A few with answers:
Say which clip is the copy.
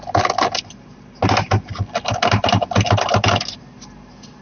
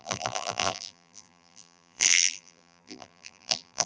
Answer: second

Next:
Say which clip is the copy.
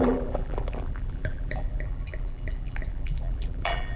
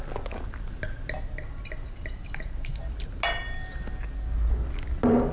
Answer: first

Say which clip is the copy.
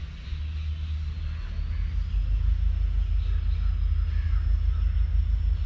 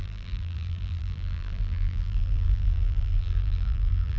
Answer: second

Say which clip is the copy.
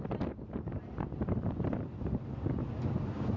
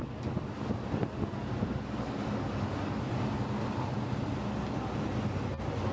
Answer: first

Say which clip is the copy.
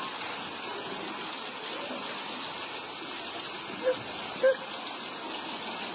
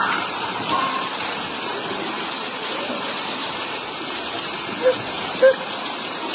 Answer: second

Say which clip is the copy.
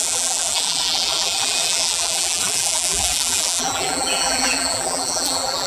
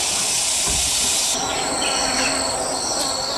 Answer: first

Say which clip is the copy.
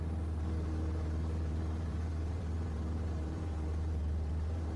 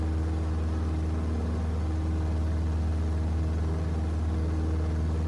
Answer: first